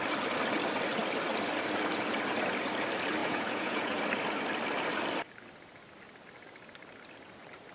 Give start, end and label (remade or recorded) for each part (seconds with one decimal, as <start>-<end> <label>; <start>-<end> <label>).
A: 0.0-3.2 recorded; 3.2-4.0 remade; 4.0-7.7 recorded